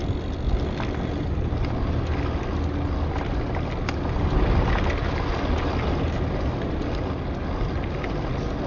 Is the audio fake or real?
real